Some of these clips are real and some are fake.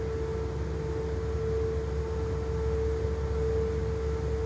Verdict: real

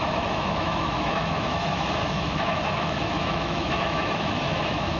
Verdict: fake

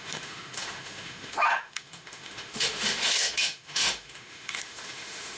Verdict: fake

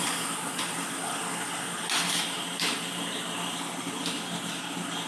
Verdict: real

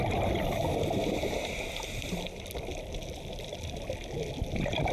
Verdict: real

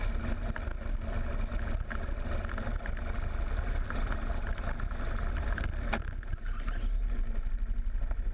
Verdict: real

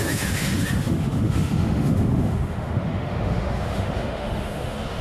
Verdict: fake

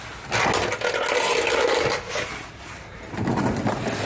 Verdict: real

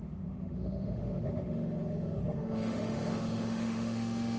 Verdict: fake